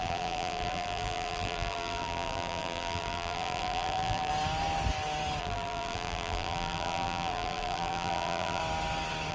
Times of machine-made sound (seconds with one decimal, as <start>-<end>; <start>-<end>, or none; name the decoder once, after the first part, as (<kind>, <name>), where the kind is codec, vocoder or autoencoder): 0.0-4.3 (vocoder, BigVGAN v2); 5.4-8.6